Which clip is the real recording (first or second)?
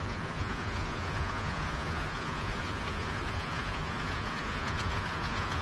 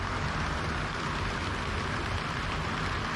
second